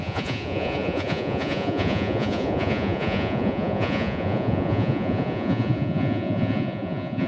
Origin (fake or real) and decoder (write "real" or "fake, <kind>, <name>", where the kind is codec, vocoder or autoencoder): fake, vocoder, Vocos